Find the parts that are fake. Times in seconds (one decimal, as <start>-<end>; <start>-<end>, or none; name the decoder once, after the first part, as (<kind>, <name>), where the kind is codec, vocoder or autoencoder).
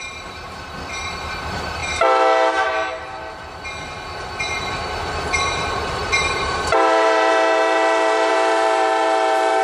0.0-1.8 (vocoder, BigVGAN v2); 4.4-9.6